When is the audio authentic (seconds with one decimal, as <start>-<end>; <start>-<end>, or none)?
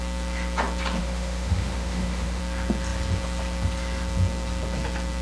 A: 0.0-1.0; 2.4-5.2